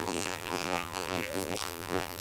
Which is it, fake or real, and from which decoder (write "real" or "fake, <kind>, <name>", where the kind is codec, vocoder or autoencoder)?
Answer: fake, vocoder, BigVGAN v2